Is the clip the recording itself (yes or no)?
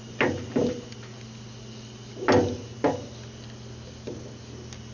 yes